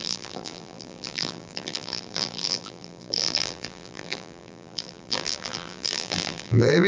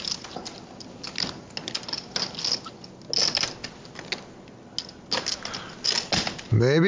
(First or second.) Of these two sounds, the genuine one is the second